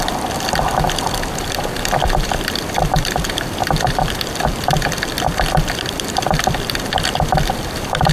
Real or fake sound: fake